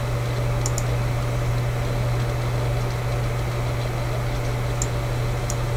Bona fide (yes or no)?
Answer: yes